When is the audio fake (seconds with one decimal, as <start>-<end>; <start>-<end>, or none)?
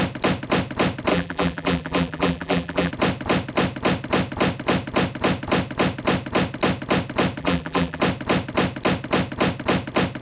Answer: 1.1-2.9; 7.4-8.0